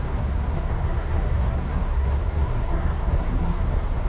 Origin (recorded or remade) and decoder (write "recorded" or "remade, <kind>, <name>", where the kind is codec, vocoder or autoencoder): remade, codec, SNAC